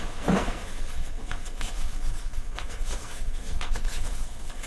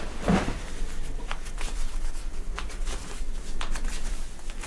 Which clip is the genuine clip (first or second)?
second